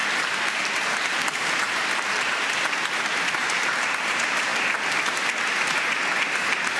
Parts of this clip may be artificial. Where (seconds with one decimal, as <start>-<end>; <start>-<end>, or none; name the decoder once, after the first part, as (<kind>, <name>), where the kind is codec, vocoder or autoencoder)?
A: 0.0-4.5 (vocoder, BigVGAN v2)